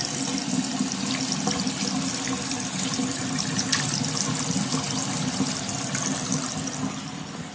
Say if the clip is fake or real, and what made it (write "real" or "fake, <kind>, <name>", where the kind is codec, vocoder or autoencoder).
real